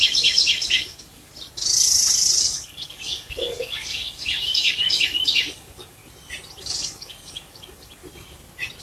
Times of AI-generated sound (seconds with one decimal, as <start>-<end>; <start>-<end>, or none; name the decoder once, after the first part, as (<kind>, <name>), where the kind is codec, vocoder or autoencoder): 0.0-1.3 (codec, DAC); 2.4-6.0; 6.6-8.0